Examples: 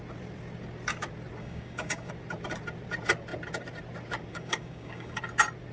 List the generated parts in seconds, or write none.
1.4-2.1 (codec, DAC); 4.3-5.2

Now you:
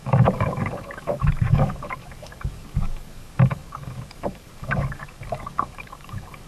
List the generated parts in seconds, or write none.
0.0-6.5 (codec, DAC)

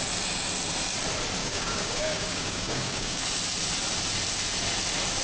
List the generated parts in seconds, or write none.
1.4-3.2 (codec, DAC)